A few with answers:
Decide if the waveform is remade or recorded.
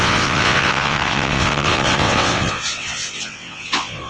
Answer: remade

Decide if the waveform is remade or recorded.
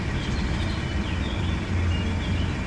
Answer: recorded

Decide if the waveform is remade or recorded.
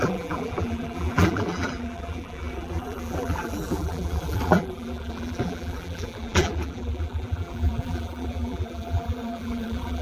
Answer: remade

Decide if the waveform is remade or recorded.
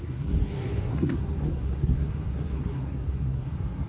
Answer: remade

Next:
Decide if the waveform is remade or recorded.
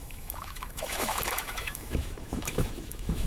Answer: remade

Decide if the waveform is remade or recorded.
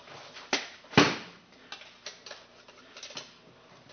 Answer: recorded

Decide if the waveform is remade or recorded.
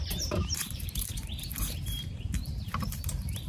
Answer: remade